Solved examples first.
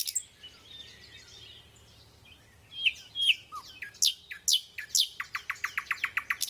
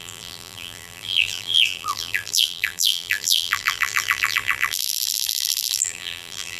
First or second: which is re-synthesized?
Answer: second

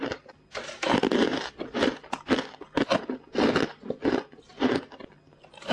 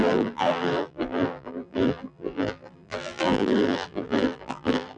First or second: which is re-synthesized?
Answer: second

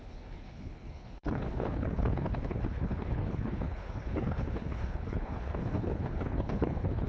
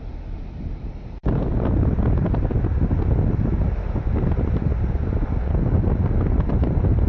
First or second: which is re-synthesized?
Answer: first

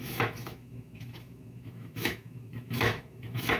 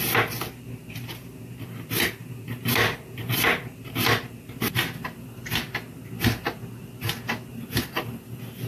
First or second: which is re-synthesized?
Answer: first